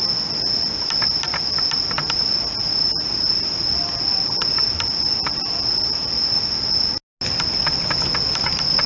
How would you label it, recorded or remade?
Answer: recorded